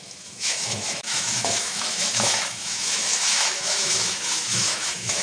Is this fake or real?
fake